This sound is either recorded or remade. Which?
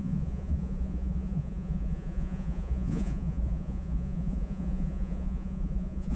remade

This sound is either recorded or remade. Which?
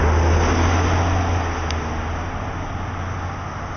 recorded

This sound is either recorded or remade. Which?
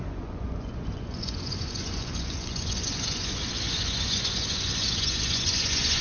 remade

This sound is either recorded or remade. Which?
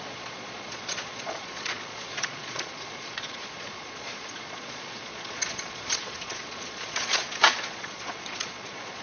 remade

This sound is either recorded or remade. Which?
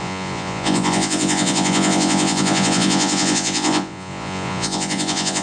remade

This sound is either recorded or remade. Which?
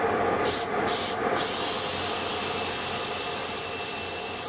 recorded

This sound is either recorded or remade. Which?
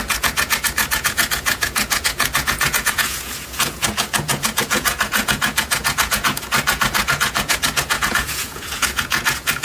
remade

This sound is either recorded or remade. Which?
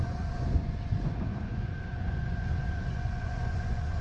remade